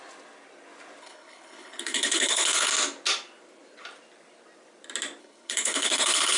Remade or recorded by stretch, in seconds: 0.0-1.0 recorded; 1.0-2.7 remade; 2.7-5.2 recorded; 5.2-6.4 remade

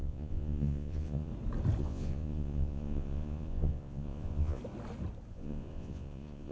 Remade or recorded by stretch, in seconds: 0.0-1.3 remade; 1.3-1.8 recorded; 1.8-4.6 remade; 4.6-5.3 recorded; 5.3-6.5 remade

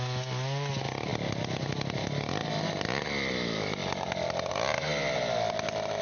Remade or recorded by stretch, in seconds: 0.0-6.0 recorded